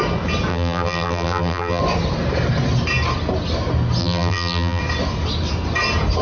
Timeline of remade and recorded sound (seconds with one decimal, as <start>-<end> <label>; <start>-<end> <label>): 0.0-0.5 recorded; 0.5-1.8 remade; 1.8-4.0 recorded; 4.0-4.8 remade; 4.8-6.2 recorded